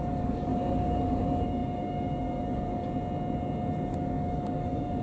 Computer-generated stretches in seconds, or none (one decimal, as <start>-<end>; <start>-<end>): 0.0-2.8; 3.9-5.0